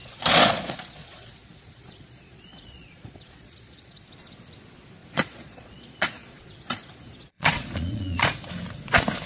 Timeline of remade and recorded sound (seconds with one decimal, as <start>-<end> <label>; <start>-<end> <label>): 0.0-4.0 remade; 4.0-5.0 recorded; 5.0-8.5 remade; 8.5-9.3 recorded